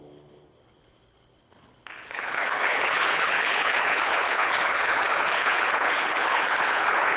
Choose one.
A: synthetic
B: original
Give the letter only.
A